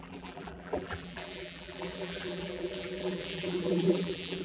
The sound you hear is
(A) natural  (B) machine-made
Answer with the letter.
B